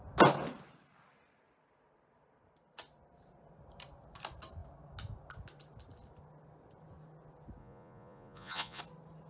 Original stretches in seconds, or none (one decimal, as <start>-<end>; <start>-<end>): 0.0-7.6; 8.8-9.3